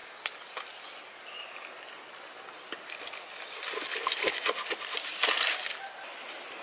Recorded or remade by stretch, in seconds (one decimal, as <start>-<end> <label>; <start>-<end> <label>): 0.0-6.6 recorded